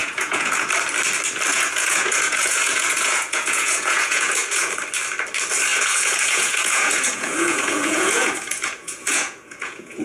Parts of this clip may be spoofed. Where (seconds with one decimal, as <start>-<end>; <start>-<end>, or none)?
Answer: 0.0-0.7; 1.5-4.7; 5.7-10.0